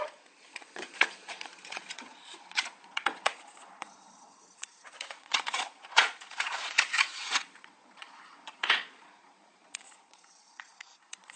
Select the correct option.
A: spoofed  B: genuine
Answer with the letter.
A